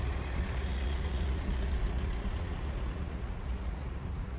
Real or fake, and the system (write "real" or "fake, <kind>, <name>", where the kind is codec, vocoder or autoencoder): fake, vocoder, Vocos